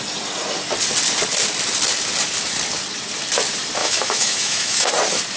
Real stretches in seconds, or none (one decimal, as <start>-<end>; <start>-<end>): 0.0-3.8; 4.9-5.4